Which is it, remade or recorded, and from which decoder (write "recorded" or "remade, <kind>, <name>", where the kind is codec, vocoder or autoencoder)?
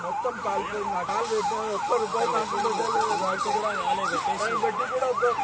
recorded